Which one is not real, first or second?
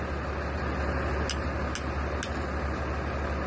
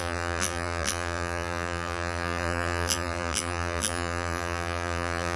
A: second